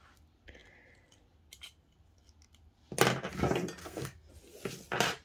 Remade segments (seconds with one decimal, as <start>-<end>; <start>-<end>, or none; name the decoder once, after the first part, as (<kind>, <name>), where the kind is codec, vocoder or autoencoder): 3.8-4.3 (codec, SNAC)